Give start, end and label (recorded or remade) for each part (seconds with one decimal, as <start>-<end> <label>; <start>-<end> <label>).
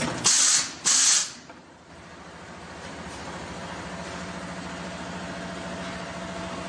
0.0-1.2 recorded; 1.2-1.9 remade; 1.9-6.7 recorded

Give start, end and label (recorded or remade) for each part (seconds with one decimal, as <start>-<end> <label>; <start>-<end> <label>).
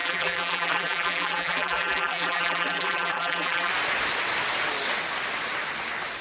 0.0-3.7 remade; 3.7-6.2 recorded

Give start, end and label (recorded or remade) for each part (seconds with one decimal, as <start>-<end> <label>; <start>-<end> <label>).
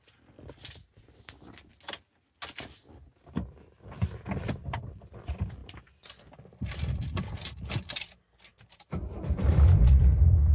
0.0-1.7 remade; 1.7-3.5 recorded; 3.5-10.5 remade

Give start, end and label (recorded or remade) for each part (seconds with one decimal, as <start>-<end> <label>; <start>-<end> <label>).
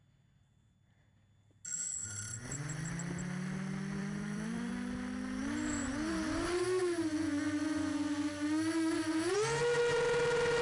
0.0-2.0 recorded; 2.0-2.9 remade; 2.9-4.0 recorded; 4.0-4.7 remade; 4.7-10.6 recorded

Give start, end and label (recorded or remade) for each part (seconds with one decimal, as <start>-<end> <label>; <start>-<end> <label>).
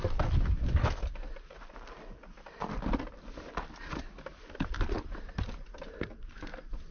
0.0-4.3 remade; 4.3-6.9 recorded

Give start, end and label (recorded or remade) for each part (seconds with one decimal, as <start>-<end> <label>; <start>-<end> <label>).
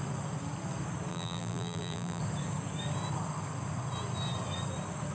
0.0-1.1 recorded; 1.1-2.2 remade; 2.2-5.1 recorded